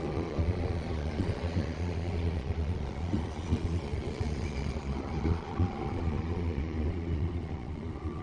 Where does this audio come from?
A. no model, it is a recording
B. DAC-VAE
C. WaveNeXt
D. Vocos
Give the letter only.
D